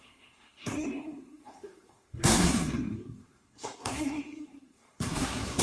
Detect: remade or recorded remade